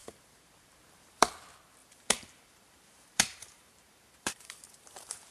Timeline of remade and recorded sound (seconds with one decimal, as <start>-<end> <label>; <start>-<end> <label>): 0.0-1.3 remade; 1.3-1.8 recorded; 1.8-5.3 remade